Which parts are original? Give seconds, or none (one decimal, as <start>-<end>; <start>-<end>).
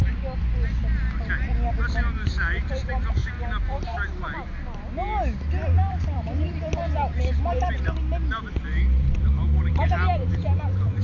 3.2-5.9